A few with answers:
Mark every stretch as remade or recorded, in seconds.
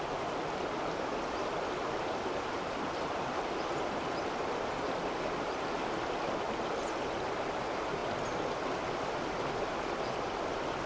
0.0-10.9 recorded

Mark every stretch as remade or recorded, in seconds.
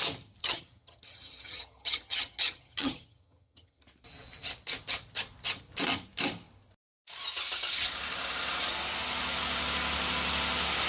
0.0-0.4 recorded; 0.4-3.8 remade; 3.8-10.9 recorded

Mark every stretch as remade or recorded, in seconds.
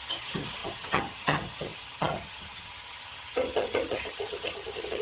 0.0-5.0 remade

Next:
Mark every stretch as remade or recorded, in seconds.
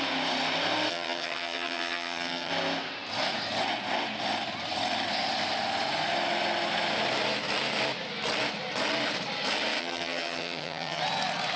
0.0-0.9 recorded; 0.9-2.5 remade; 2.5-9.8 recorded; 9.8-11.0 remade; 11.0-11.6 recorded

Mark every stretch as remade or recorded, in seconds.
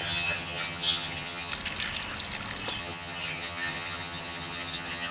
0.0-1.5 remade; 1.5-2.8 recorded; 2.8-5.1 remade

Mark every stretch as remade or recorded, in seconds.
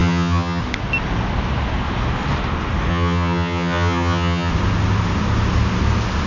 0.0-0.6 remade; 0.6-2.9 recorded; 2.9-4.5 remade; 4.5-6.3 recorded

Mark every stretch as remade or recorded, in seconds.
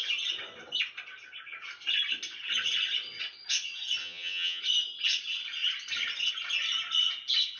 0.0-4.0 recorded; 4.0-4.6 remade; 4.6-7.6 recorded